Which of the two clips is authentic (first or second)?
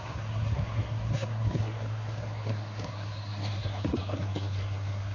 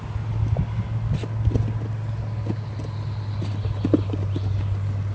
second